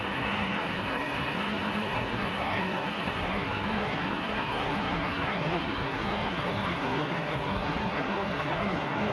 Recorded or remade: remade